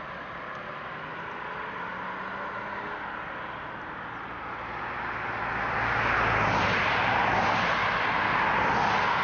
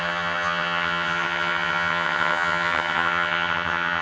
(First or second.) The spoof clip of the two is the second